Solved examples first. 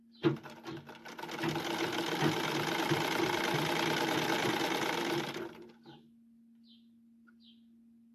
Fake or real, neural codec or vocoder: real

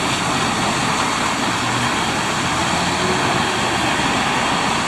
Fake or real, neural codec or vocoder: real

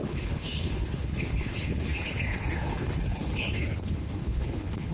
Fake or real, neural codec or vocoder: fake, codec, HILCodec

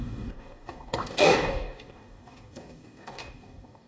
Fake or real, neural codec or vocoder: fake, codec, DAC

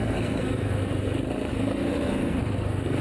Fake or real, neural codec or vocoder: fake, codec, SNAC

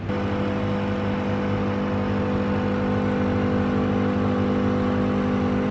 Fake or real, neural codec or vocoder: real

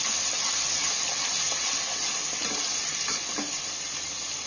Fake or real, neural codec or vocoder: real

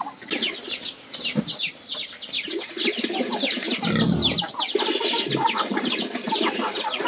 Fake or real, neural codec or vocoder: real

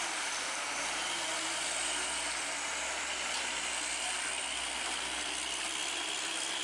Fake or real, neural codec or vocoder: real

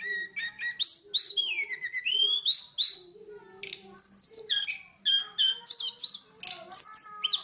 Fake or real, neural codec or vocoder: real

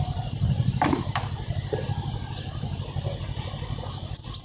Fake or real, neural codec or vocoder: real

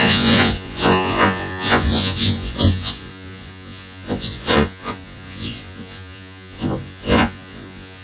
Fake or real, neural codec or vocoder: fake, vocoder, Vocos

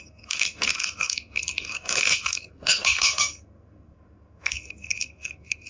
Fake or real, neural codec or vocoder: fake, codec, SNAC